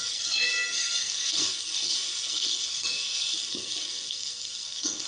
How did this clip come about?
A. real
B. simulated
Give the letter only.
B